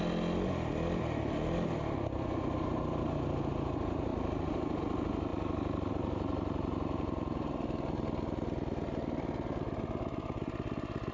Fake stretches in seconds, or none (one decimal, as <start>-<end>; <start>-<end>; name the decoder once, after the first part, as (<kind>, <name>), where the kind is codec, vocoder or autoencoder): none